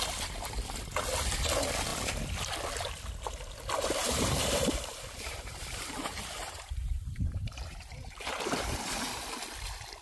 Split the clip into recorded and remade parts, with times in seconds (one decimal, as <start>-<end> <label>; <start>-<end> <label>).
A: 0.0-4.0 recorded; 4.0-9.2 remade; 9.2-10.0 recorded